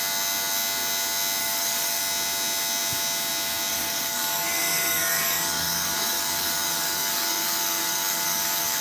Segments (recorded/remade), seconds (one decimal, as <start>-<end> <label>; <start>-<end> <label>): 0.0-1.4 recorded; 1.4-2.0 remade; 2.0-3.7 recorded; 3.7-8.8 remade